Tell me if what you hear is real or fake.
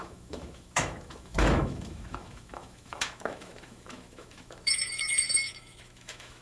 fake